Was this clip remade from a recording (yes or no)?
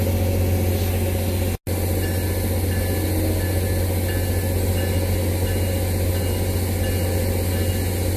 no